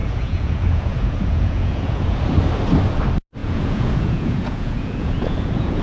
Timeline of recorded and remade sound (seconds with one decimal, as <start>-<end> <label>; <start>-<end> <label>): 0.0-2.2 remade; 2.2-3.4 recorded; 3.4-5.8 remade